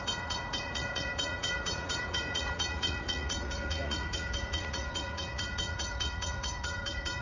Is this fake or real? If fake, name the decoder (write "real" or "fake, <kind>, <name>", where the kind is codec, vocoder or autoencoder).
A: fake, vocoder, Vocos